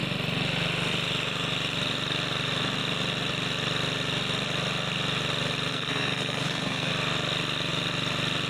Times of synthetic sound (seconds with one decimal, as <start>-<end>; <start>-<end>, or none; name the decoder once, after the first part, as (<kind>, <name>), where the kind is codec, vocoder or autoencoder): 5.7-6.9 (codec, SNAC)

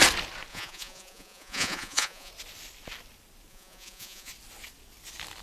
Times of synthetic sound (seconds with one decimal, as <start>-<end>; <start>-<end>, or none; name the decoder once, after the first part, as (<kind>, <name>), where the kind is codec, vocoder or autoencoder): 0.5-2.3 (vocoder, Vocos); 3.5-4.3

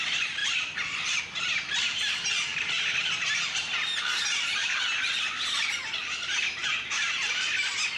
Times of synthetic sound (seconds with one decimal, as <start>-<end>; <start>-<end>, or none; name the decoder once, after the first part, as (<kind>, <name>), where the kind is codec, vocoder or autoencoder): 0.4-1.2 (vocoder, BigVGAN v2); 4.6-5.2; 6.6-7.3

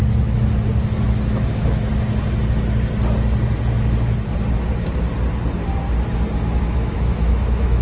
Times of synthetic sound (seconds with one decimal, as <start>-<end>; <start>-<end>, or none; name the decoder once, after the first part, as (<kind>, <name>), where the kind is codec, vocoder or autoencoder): 1.0-1.9 (autoencoder, DAC-VAE); 6.6-7.8

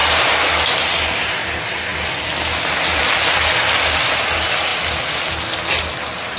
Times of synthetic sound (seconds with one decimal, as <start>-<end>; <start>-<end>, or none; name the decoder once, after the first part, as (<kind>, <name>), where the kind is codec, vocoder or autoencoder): none

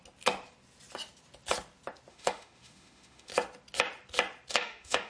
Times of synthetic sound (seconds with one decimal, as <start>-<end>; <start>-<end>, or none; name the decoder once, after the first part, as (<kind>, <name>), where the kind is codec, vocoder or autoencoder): 2.1-3.3 (autoencoder, DAC-VAE); 4.5-5.1